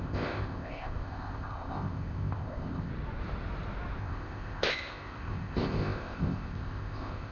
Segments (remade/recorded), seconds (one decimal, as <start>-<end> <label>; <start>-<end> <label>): 0.0-2.9 remade; 2.9-4.0 recorded; 4.0-7.3 remade